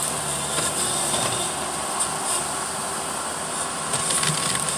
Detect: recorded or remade recorded